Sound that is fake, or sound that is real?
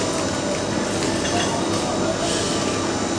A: real